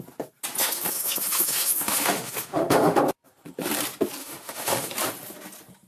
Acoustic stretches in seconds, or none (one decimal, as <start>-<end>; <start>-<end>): 0.0-0.6; 3.0-4.2; 4.9-5.9